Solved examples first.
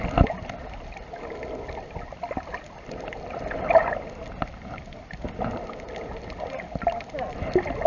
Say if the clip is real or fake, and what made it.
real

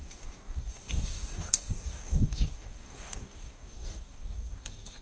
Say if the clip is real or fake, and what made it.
fake, codec, DAC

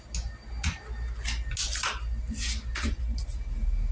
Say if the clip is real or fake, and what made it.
real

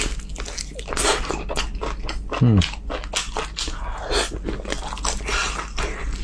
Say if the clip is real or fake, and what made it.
real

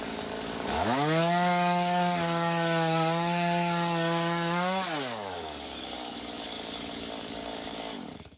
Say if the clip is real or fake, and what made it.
fake, codec, DAC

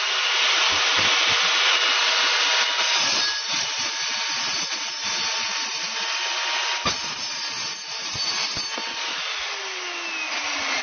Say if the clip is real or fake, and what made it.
real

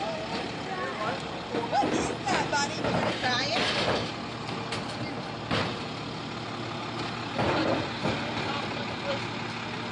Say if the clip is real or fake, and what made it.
real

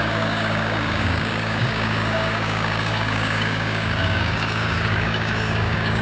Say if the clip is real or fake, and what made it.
fake, codec, DAC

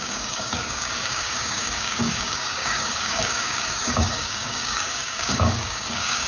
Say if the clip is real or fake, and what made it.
fake, codec, DAC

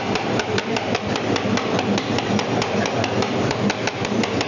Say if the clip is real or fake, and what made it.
real